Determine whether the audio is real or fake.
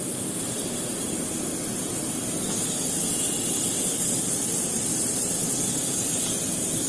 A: real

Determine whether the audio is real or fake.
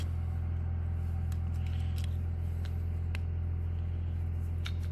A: real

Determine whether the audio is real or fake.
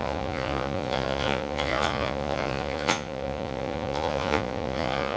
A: fake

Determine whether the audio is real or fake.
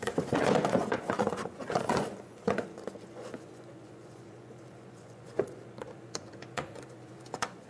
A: fake